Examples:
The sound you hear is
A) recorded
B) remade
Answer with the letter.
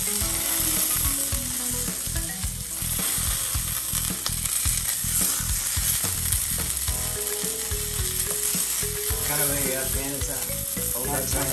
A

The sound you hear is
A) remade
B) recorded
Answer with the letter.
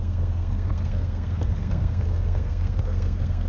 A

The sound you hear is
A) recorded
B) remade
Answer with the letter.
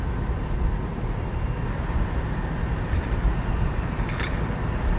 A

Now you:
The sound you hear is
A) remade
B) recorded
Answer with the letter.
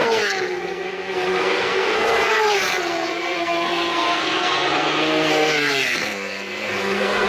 A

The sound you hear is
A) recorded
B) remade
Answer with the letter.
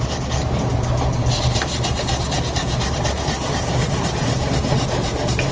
A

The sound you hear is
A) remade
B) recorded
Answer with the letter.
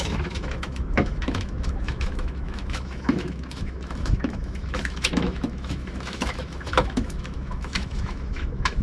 A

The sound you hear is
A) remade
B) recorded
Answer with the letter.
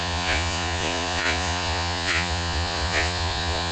A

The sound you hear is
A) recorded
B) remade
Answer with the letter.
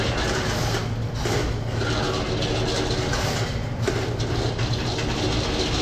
A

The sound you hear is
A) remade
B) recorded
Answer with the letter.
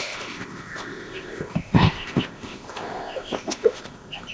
A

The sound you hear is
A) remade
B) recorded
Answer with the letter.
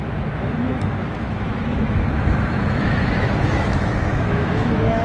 A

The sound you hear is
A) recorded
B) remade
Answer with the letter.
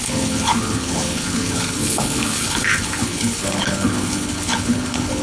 B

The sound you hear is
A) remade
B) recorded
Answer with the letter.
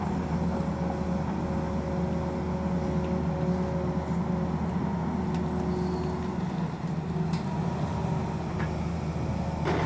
B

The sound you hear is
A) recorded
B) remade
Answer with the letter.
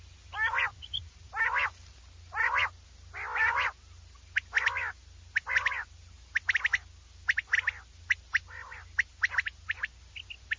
A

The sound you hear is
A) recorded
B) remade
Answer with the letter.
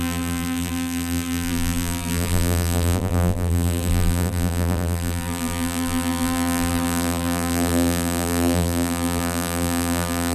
B